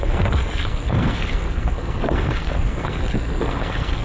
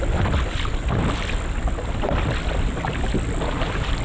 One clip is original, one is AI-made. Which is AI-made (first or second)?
first